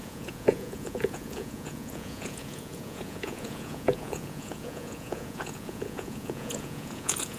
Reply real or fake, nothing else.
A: fake